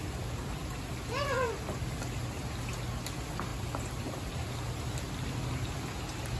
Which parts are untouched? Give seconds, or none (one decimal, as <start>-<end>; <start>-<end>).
0.0-6.4